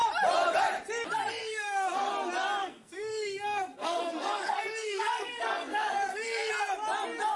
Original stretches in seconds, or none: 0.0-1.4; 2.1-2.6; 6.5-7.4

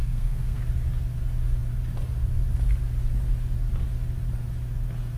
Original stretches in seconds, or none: 0.6-5.2

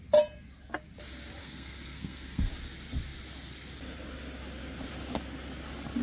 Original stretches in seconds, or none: 0.0-1.4; 2.5-6.0

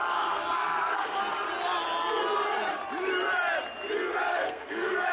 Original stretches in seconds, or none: 1.2-4.3

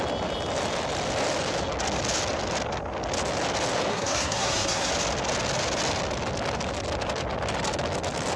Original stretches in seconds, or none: 0.0-3.9; 4.9-8.4